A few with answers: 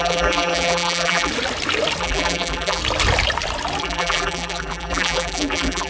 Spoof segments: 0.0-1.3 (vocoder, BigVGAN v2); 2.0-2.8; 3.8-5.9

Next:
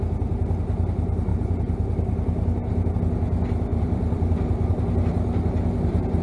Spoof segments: 3.7-4.8 (vocoder, BigVGAN v2)

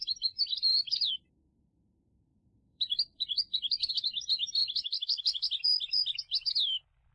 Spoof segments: 0.0-1.1 (vocoder, BigVGAN v2); 2.3-3.9; 4.6-6.0

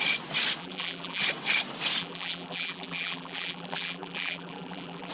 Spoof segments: 0.6-1.2 (vocoder, BigVGAN v2); 2.0-5.1

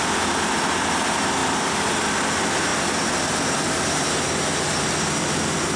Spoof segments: 1.4-2.1 (vocoder, BigVGAN v2); 2.7-3.6

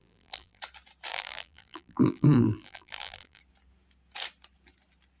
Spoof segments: 0.0-0.6 (vocoder, BigVGAN v2); 1.1-3.4

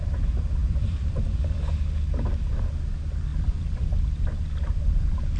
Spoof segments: 0.6-1.7 (vocoder, BigVGAN v2); 3.3-3.9

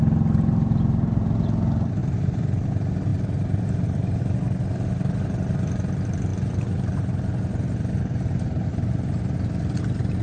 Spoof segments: 2.0-2.7 (vocoder, BigVGAN v2); 3.1-4.2